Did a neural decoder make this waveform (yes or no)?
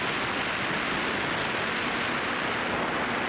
no